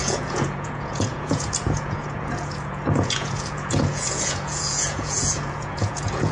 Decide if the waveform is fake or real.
fake